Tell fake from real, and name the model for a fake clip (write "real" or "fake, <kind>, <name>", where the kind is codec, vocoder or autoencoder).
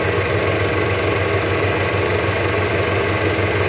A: real